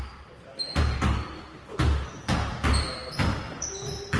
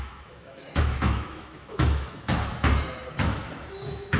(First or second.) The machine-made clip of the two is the second